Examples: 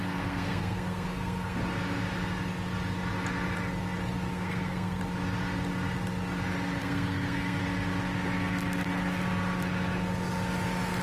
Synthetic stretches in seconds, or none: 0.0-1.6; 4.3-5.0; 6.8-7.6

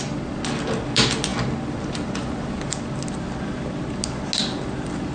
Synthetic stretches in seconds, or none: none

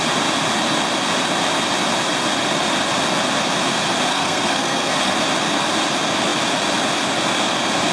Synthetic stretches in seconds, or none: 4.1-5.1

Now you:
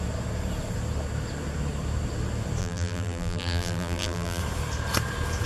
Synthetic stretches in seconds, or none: 2.6-4.4

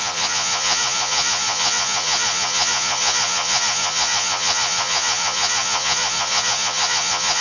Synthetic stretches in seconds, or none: 0.0-7.4

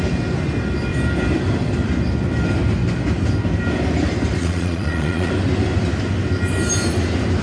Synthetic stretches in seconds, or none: 4.4-5.3

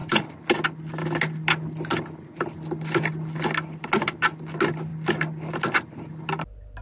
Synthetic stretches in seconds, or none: none